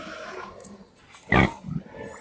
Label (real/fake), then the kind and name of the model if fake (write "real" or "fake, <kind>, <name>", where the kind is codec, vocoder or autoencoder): real